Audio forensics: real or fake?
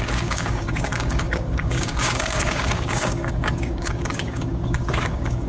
fake